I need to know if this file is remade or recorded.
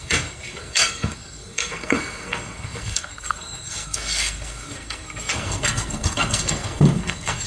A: remade